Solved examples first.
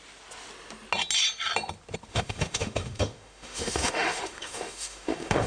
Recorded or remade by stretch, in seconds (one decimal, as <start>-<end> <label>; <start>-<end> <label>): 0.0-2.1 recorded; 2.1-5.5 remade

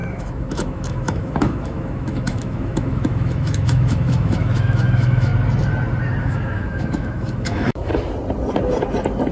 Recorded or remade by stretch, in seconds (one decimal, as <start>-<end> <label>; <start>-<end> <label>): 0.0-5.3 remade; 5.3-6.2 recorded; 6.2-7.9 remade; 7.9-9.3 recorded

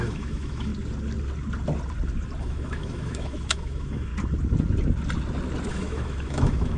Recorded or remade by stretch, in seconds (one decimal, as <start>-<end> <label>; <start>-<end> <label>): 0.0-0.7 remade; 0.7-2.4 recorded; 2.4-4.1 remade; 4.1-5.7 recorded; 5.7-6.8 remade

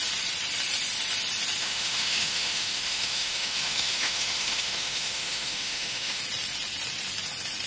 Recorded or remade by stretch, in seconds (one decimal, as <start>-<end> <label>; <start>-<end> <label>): 0.0-1.6 recorded; 1.6-6.2 remade; 6.2-7.7 recorded